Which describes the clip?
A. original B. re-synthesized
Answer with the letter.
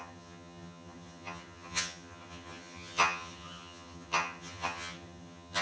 B